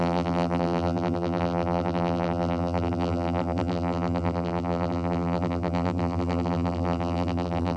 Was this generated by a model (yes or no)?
yes